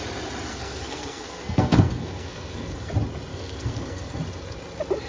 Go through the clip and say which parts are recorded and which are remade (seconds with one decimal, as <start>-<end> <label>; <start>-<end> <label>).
0.0-0.5 recorded; 0.5-2.9 remade; 2.9-3.3 recorded; 3.3-4.2 remade; 4.2-5.1 recorded